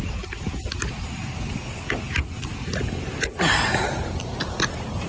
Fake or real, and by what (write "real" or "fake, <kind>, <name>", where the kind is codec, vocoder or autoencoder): real